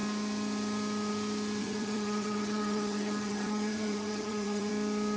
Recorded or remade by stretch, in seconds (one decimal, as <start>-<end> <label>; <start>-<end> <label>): 0.0-1.6 recorded; 1.6-4.7 remade; 4.7-5.2 recorded